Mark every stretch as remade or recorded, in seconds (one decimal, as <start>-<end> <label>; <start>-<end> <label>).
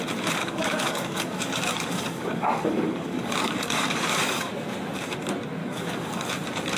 0.0-0.4 recorded; 0.4-4.5 remade; 4.5-5.6 recorded; 5.6-6.2 remade; 6.2-6.8 recorded